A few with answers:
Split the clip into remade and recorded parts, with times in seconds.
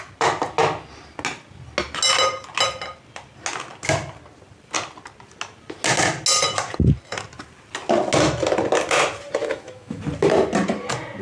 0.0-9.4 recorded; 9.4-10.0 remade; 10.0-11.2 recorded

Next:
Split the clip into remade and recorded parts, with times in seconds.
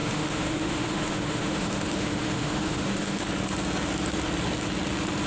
0.0-3.2 remade; 3.2-5.3 recorded